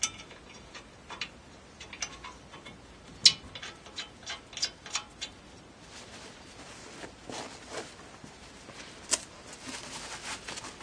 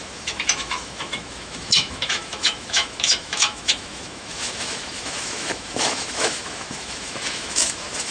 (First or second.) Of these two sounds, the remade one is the second